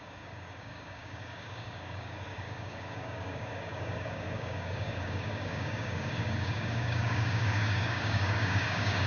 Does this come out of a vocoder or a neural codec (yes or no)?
yes